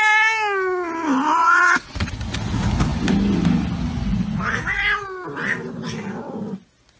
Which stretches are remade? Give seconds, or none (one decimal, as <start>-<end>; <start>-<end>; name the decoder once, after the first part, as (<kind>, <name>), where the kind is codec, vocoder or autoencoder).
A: 1.4-2.1 (vocoder, Vocos)